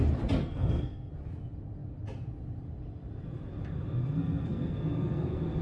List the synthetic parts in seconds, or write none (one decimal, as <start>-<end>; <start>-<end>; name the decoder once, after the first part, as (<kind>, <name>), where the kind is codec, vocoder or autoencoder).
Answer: 0.4-1.1 (codec, SNAC); 4.0-5.6